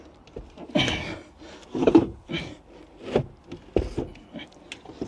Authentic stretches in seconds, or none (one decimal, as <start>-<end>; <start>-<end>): 0.0-1.8; 2.3-5.1